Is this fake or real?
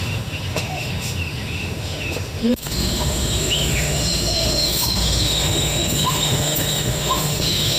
fake